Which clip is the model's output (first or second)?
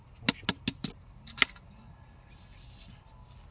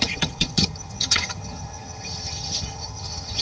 second